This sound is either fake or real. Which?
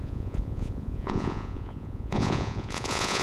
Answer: fake